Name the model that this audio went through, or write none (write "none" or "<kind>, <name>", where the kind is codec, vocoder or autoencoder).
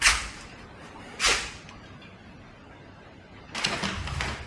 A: none